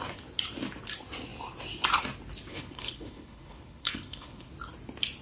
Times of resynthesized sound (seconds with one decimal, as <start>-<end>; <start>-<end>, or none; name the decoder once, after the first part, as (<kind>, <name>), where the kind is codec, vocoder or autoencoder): 2.5-4.5 (codec, HILCodec)